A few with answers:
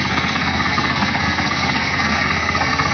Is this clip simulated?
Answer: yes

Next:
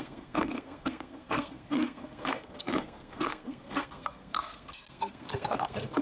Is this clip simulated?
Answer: yes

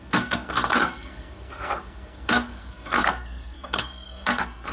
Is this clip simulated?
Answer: yes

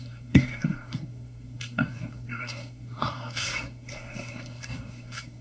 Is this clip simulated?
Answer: yes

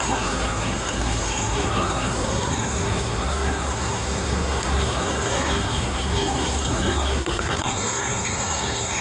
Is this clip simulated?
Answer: yes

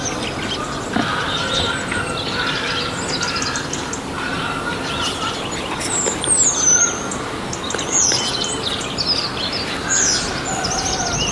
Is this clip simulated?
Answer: no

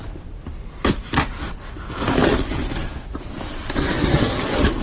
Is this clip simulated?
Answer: no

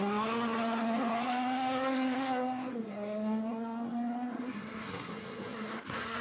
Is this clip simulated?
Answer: yes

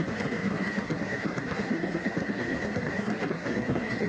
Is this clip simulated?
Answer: yes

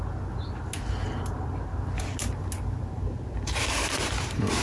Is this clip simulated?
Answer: no